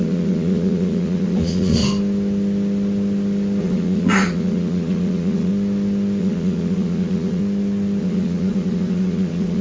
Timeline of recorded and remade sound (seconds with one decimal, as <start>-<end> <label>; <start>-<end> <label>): 0.0-1.8 remade; 1.8-3.6 recorded; 3.6-5.5 remade; 5.5-6.2 recorded; 6.2-7.4 remade; 7.4-8.0 recorded; 8.0-9.6 remade